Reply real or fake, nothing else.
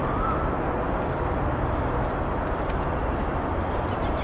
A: real